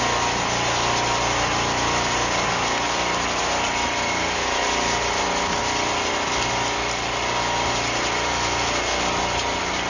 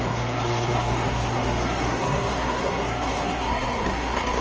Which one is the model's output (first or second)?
second